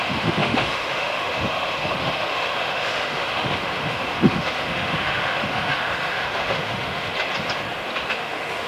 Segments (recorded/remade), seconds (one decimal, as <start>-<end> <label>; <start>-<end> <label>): 0.0-7.1 remade; 7.1-8.1 recorded; 8.1-8.7 remade

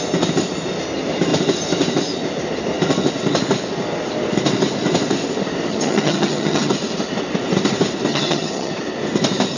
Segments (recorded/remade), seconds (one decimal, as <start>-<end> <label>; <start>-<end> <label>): 0.0-5.7 recorded; 5.7-6.7 remade; 6.7-8.1 recorded; 8.1-8.7 remade; 8.7-9.6 recorded

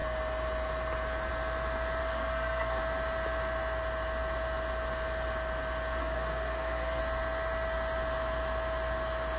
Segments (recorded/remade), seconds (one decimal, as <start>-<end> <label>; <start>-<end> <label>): 0.0-2.0 recorded; 2.0-2.8 remade; 2.8-6.0 recorded; 6.0-7.0 remade; 7.0-9.4 recorded

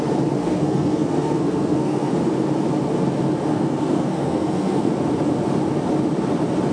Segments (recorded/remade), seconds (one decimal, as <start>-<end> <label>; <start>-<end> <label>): 0.0-0.4 recorded; 0.4-2.1 remade; 2.1-3.5 recorded; 3.5-4.9 remade; 4.9-6.7 recorded

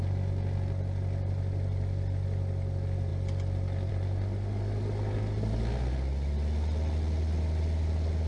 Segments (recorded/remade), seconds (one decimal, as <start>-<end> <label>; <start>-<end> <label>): 0.0-8.3 recorded